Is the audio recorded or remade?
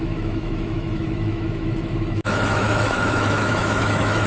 remade